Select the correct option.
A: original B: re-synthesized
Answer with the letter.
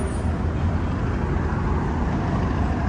A